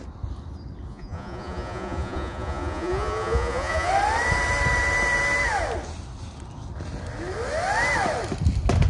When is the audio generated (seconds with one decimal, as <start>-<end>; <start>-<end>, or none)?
0.9-3.9